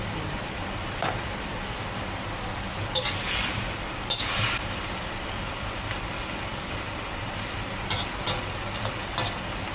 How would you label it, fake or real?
fake